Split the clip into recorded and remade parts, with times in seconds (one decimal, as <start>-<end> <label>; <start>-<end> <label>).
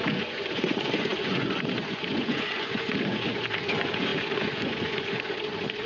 0.0-5.9 remade